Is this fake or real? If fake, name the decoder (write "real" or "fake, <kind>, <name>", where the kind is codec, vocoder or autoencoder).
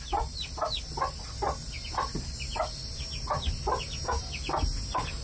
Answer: real